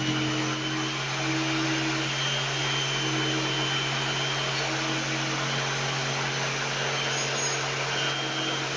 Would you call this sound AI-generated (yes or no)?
no